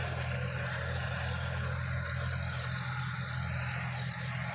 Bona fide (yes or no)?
yes